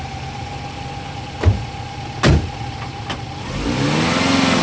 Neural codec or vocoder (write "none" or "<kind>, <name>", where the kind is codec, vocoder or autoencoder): none